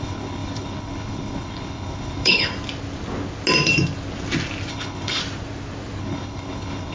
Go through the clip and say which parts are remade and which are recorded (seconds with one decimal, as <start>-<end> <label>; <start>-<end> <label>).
0.0-2.5 remade; 2.5-4.7 recorded; 4.7-5.2 remade; 5.2-6.0 recorded; 6.0-6.9 remade